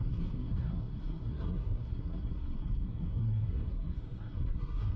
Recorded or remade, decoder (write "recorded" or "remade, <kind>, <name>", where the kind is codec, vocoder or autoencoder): remade, codec, SNAC